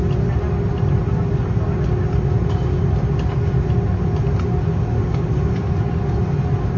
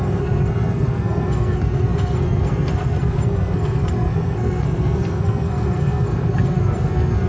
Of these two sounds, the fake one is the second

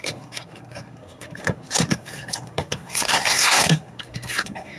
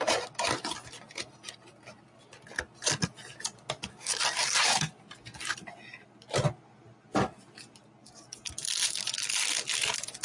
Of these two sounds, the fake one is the first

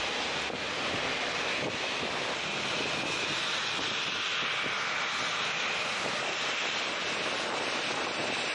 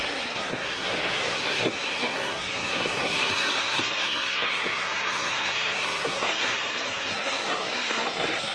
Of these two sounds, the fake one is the second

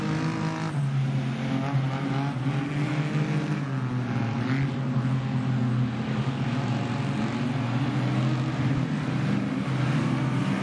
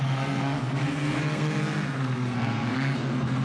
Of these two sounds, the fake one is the second